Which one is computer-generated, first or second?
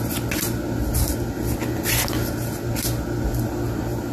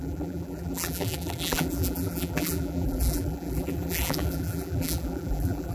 second